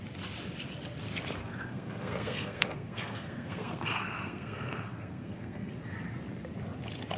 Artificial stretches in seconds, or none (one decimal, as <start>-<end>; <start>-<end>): 1.4-5.7